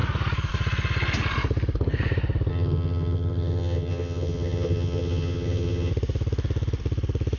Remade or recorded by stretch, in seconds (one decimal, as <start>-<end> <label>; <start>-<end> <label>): 0.0-2.5 recorded; 2.5-5.9 remade; 5.9-7.4 recorded